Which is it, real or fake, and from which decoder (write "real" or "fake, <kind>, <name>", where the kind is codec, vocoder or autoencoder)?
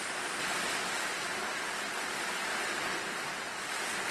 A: real